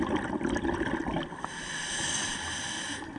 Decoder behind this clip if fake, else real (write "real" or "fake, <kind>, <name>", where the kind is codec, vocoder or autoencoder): real